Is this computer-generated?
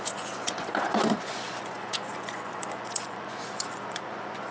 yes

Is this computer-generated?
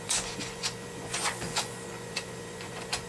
yes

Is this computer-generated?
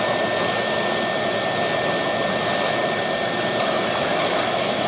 no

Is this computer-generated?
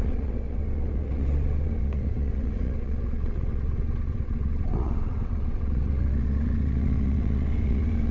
yes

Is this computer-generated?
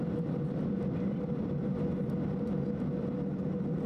no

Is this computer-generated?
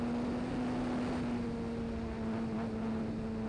no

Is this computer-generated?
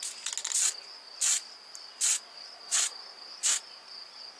no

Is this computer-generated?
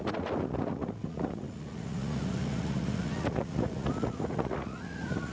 yes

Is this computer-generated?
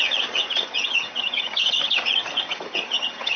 yes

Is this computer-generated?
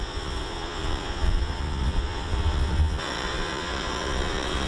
yes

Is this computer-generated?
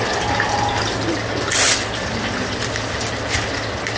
no